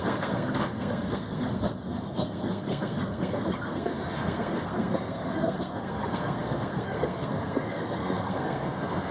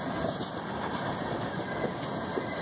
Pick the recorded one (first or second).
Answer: second